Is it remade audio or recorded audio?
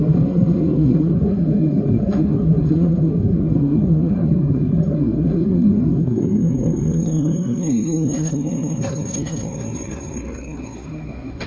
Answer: remade